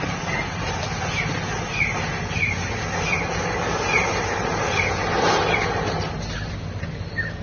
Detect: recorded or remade recorded